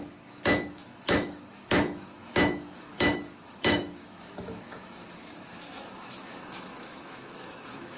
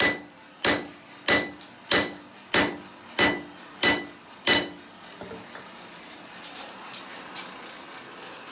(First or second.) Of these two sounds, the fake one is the first